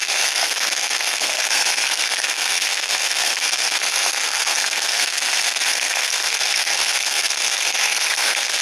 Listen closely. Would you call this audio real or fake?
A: fake